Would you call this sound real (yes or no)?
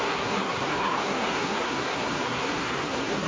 no